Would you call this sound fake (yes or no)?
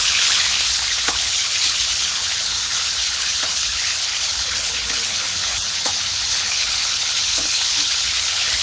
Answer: yes